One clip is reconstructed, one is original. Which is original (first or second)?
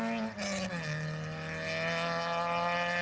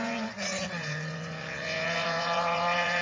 first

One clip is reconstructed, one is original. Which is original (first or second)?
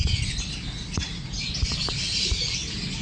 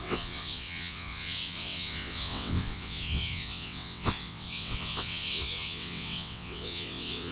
first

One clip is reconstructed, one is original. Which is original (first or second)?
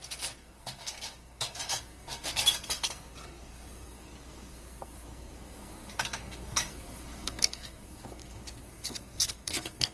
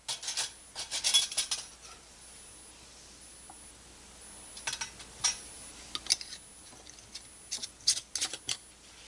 second